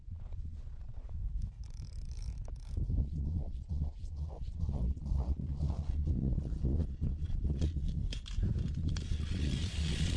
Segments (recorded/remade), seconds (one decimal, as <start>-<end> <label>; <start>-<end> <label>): 0.0-1.2 remade; 1.2-3.0 recorded; 3.0-8.0 remade; 8.0-8.7 recorded; 8.7-10.2 remade